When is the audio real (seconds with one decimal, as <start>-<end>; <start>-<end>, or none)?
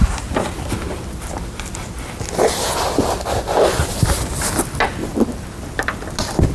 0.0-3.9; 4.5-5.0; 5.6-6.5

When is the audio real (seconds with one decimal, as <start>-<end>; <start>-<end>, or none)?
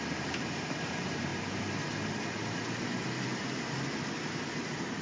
0.0-5.0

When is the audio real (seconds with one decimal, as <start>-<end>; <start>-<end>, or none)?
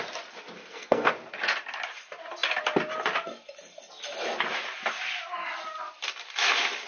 0.0-0.6; 1.1-6.9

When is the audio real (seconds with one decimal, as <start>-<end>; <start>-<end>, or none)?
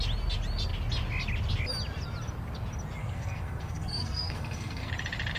0.0-3.0; 4.9-5.4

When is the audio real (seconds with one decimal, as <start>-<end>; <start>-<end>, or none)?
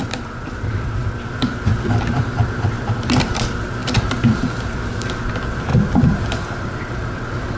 5.7-7.6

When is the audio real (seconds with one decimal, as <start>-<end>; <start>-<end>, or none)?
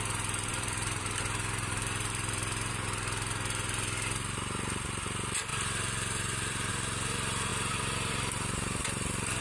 0.0-0.5; 2.7-5.5; 6.7-7.5